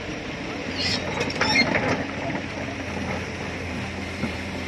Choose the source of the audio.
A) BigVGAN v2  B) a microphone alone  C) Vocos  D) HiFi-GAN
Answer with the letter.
A